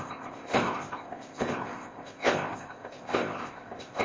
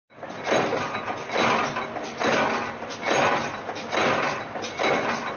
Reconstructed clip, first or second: first